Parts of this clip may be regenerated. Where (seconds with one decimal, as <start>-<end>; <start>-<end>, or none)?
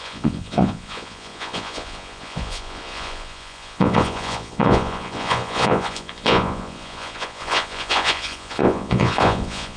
0.0-9.8